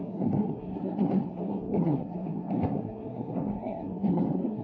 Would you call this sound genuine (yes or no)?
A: no